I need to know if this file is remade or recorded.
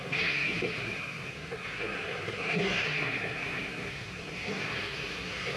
remade